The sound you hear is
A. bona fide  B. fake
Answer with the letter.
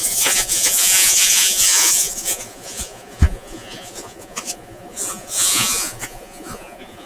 B